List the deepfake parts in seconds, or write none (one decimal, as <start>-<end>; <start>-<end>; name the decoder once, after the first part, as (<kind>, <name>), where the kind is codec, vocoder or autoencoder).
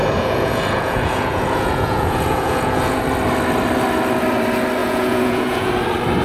0.0-3.0 (vocoder, Vocos); 4.8-5.7